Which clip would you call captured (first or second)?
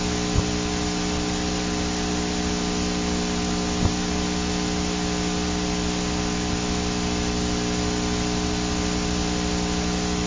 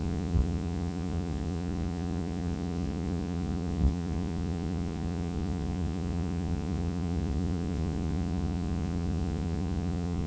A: first